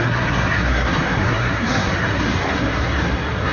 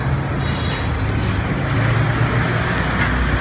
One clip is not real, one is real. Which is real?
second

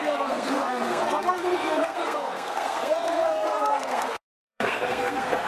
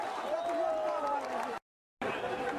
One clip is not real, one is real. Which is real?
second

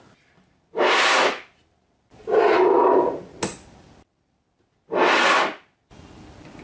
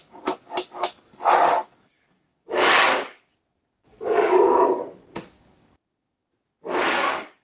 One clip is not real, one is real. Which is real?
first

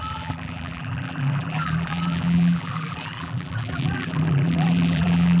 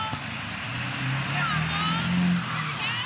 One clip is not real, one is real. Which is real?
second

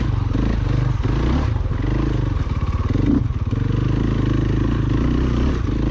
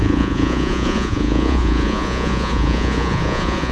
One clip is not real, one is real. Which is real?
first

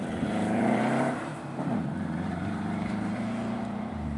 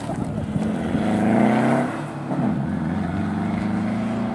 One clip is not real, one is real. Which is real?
second